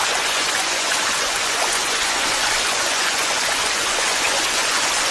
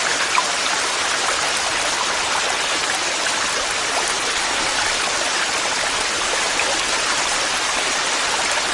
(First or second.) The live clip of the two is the second